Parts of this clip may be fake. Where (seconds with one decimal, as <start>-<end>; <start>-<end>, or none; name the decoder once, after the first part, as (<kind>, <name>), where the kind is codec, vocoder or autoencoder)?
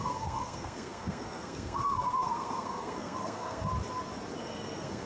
0.0-3.7 (codec, SNAC); 4.4-5.1